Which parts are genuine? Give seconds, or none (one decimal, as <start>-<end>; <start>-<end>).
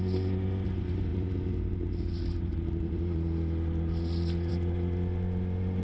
0.0-5.8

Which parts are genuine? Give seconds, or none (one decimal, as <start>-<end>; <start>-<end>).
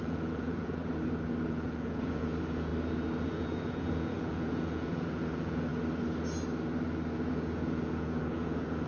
0.8-1.5; 2.7-3.2; 5.7-7.3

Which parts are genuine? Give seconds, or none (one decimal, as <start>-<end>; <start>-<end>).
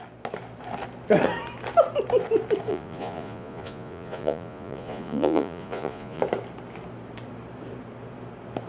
0.0-2.7; 6.2-8.7